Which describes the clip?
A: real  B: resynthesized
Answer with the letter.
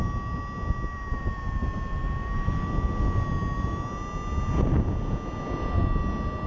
A